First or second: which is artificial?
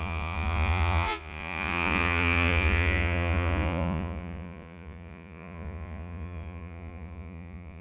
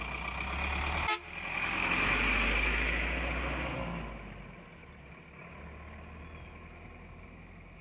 first